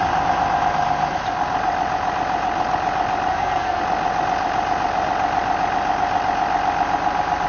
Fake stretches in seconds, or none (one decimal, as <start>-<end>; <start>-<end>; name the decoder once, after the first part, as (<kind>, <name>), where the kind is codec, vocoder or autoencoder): 3.3-3.8 (codec, SNAC)